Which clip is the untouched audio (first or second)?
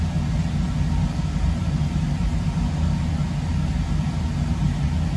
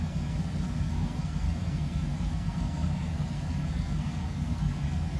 first